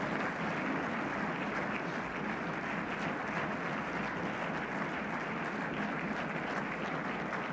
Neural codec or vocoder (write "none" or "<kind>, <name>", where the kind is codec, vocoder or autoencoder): none